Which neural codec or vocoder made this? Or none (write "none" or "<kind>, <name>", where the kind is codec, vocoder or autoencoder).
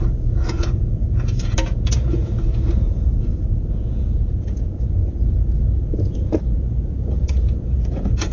vocoder, Vocos